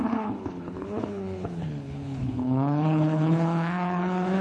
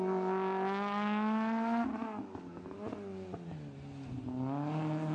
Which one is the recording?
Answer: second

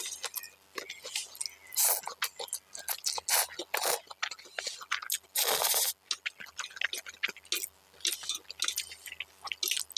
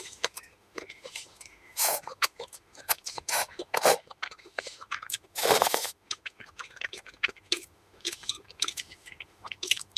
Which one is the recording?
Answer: first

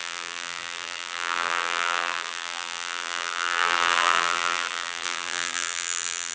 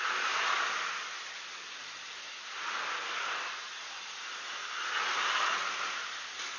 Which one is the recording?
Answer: second